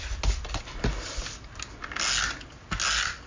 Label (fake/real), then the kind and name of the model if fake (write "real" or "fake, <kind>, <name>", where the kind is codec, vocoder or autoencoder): real